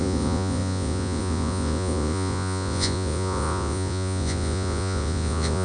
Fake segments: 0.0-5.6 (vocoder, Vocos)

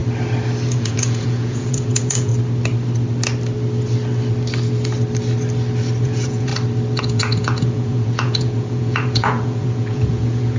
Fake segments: 0.7-2.3 (vocoder, Vocos); 6.0-6.5; 7.0-10.6

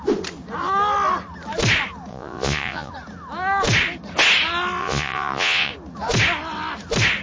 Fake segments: 2.1-2.9 (vocoder, Vocos); 4.8-5.7

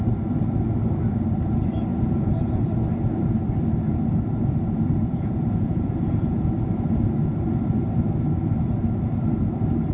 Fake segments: 1.9-2.6 (vocoder, Vocos); 5.0-6.5

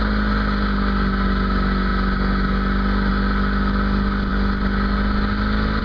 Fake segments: none

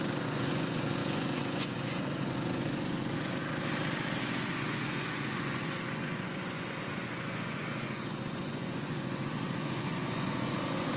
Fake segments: 0.0-3.4 (vocoder, Vocos); 4.2-11.0

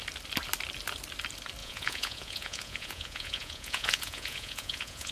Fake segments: 1.6-5.1 (vocoder, Vocos)

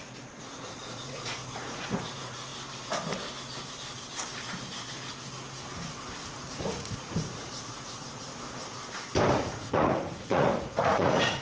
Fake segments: 0.0-2.5 (vocoder, Vocos); 6.5-8.3; 9.3-11.4